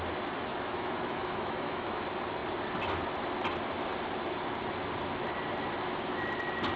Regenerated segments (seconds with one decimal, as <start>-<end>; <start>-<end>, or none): 0.5-2.0

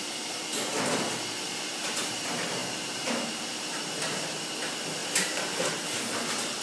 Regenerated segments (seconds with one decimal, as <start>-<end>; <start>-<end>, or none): 0.0-0.5; 1.5-6.6